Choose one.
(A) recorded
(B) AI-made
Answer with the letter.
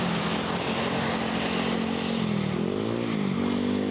A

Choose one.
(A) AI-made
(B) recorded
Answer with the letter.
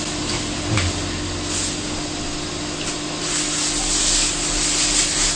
B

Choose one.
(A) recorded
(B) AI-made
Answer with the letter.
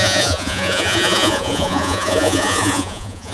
B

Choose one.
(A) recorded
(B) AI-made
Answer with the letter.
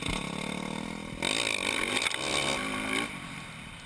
A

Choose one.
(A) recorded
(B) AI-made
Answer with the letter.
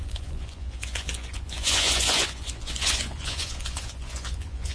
B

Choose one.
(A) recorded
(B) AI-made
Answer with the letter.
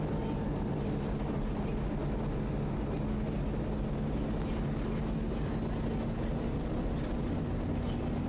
A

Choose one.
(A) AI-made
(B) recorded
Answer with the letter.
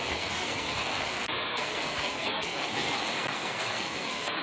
A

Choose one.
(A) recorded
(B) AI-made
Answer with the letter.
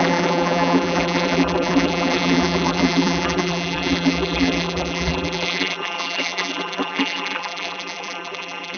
B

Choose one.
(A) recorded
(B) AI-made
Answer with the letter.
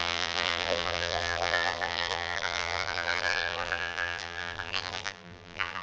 B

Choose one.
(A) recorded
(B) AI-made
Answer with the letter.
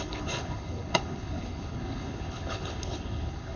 B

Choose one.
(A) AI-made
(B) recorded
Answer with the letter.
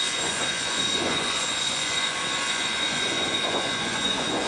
A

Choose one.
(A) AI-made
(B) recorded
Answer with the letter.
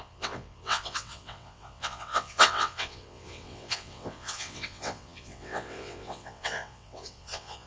A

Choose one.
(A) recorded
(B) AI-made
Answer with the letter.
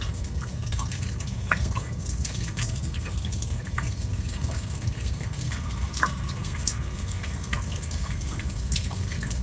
B